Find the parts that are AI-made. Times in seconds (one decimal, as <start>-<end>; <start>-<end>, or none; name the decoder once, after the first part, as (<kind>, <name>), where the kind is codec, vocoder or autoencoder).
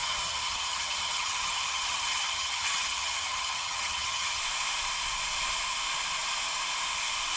0.0-4.4 (vocoder, HiFi-GAN)